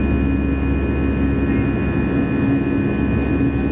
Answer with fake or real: real